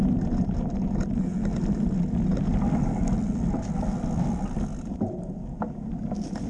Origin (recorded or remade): recorded